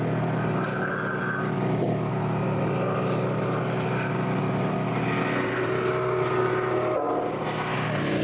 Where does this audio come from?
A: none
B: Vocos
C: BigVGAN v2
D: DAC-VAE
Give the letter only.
A